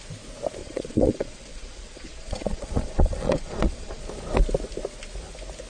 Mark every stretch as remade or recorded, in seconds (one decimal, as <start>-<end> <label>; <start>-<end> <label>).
0.0-0.6 recorded; 0.6-4.0 remade; 4.0-5.7 recorded